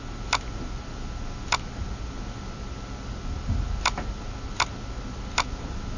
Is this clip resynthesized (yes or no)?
no